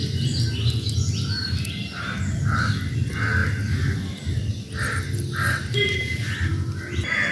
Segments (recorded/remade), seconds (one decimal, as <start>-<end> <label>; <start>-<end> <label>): 0.0-7.3 recorded